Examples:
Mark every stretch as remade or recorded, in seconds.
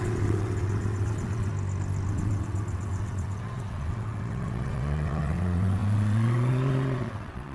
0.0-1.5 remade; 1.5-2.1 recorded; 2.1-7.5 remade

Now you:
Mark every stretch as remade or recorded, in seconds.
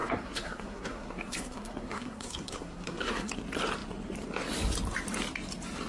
0.0-3.3 remade; 3.3-5.9 recorded